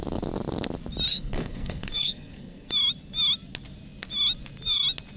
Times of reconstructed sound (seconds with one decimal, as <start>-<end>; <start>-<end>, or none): 1.1-2.7